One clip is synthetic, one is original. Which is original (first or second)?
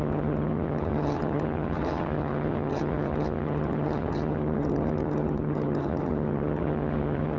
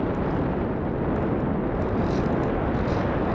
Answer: second